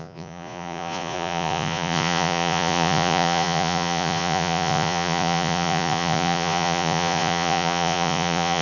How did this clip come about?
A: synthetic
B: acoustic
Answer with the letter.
A